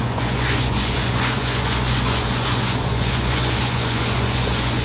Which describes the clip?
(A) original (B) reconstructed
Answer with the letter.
B